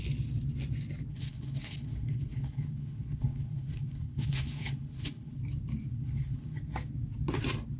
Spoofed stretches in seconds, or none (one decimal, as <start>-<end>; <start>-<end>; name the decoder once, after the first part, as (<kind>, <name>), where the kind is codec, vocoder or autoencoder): 1.1-5.4 (codec, HILCodec); 5.9-6.6